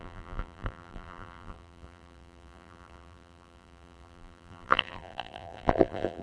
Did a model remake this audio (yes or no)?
yes